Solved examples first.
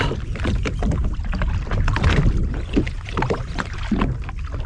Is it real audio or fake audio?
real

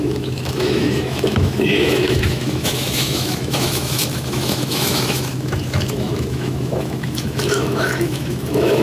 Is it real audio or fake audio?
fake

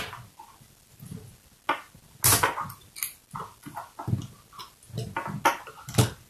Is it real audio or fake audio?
real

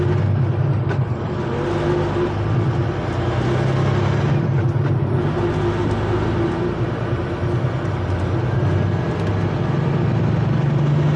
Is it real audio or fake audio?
real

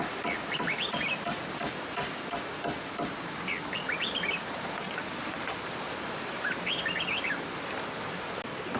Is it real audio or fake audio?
real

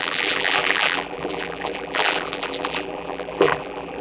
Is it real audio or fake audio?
fake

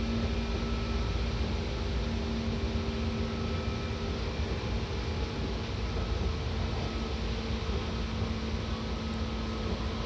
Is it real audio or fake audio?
real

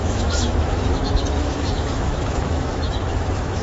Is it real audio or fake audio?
fake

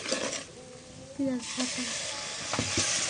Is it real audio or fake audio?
real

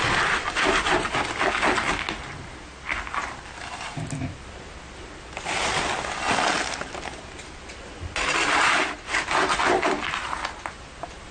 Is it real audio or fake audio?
real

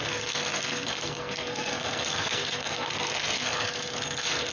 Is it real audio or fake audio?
fake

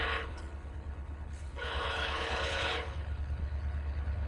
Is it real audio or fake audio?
fake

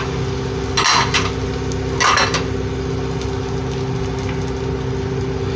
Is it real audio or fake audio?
real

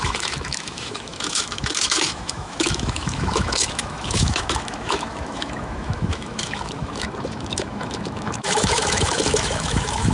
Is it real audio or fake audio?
fake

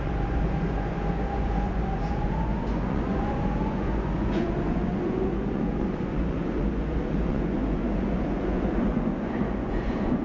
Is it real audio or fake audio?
fake